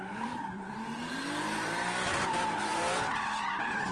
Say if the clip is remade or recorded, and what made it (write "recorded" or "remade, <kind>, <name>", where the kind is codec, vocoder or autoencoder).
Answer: remade, vocoder, BigVGAN v2